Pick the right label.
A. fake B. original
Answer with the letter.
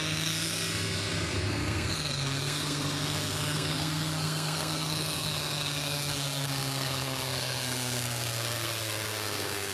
A